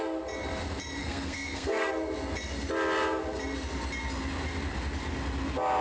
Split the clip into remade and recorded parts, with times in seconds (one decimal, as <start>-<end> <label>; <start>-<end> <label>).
0.0-1.0 recorded; 1.0-1.9 remade; 1.9-5.8 recorded